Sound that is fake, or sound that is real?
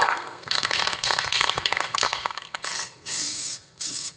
fake